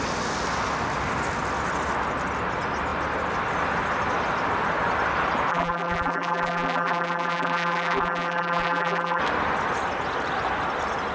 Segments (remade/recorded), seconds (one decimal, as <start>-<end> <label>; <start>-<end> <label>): 0.0-5.5 recorded; 5.5-9.2 remade; 9.2-11.1 recorded